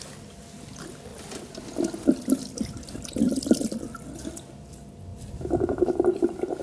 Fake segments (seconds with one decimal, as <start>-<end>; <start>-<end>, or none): none